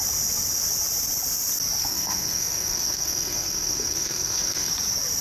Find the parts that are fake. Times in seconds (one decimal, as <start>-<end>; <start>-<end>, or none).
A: 1.8-4.7